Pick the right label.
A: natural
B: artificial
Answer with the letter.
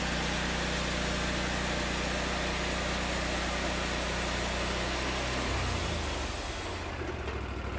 A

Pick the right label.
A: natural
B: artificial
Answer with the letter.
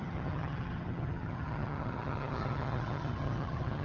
B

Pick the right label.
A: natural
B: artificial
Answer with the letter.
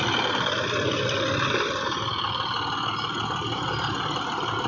A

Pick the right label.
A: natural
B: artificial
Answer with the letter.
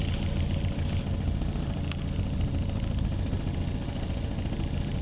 A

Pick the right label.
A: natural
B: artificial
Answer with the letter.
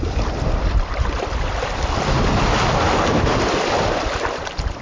A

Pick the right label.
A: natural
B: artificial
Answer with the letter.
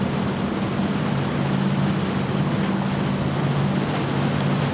A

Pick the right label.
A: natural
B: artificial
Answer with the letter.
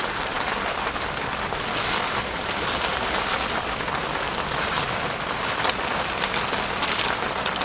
A